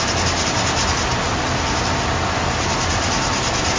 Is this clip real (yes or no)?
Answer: yes